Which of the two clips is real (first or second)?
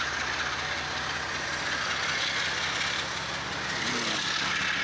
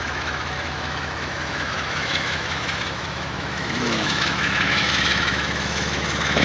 first